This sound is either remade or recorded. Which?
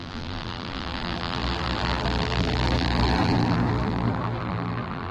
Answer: remade